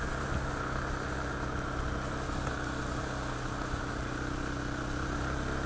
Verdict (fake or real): real